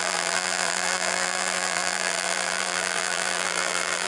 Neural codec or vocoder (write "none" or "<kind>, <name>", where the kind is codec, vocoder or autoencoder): vocoder, BigVGAN v2